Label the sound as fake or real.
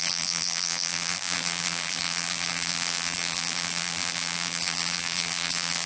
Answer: fake